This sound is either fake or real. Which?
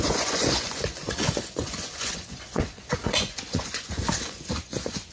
fake